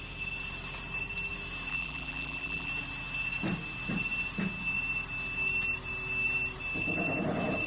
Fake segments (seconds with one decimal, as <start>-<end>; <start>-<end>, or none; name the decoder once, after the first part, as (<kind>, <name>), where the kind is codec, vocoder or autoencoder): 1.7-2.7 (vocoder, BigVGAN v2)